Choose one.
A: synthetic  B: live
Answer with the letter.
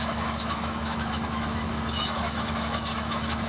A